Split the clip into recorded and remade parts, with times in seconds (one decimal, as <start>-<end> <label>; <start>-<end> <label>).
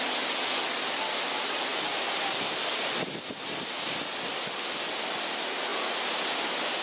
0.0-6.8 recorded